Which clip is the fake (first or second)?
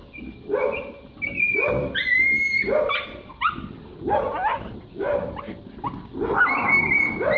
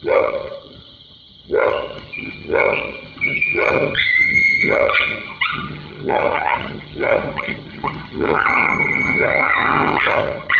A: second